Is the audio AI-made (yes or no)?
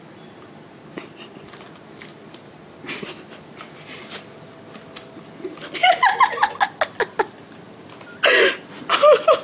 no